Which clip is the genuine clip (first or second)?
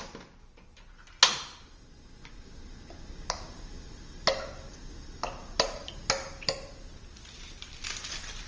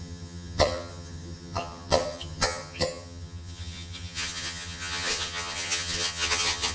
first